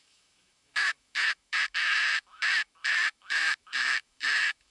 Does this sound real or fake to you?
fake